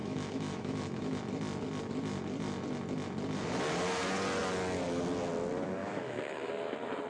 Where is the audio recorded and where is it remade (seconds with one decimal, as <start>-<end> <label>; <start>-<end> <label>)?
0.0-1.2 remade; 1.2-5.8 recorded; 5.8-6.5 remade; 6.5-7.1 recorded